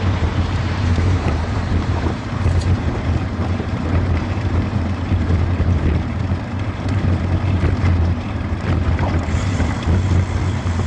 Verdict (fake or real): fake